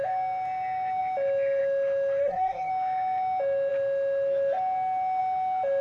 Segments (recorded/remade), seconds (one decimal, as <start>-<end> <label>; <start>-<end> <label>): 0.0-2.2 recorded; 2.2-2.7 remade; 2.7-5.8 recorded